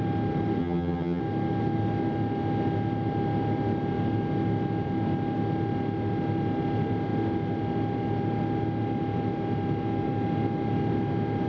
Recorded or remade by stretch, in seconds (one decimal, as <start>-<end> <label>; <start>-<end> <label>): 0.0-0.6 recorded; 0.6-1.2 remade; 1.2-11.5 recorded